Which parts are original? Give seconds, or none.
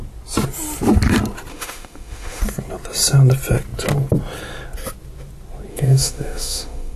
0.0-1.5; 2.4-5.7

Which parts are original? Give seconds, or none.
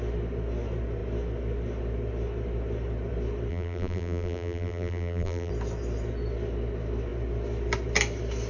0.0-3.5; 5.5-8.5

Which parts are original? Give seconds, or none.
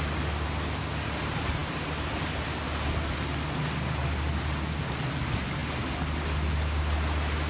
0.0-7.5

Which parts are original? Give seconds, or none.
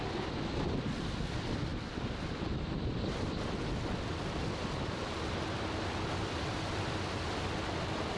0.0-8.2